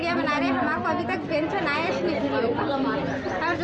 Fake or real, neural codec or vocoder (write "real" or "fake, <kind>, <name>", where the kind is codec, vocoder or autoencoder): real